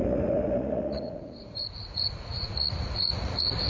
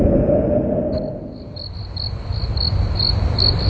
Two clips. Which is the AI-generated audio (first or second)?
first